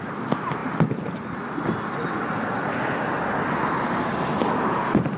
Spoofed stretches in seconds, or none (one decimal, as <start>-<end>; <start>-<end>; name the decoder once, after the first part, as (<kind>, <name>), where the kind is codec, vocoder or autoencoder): none